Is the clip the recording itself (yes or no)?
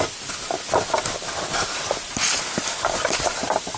yes